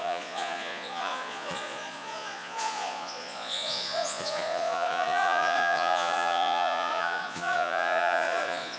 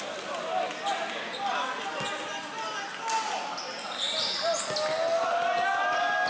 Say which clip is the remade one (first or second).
first